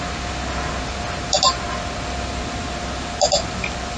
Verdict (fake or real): real